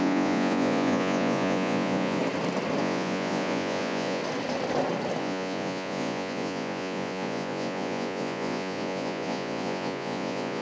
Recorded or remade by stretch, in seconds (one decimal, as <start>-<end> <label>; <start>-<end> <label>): 0.0-2.2 remade; 2.2-2.8 recorded; 2.8-4.2 remade; 4.2-5.2 recorded; 5.2-10.6 remade